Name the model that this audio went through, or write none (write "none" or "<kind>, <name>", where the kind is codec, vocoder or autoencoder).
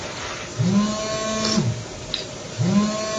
none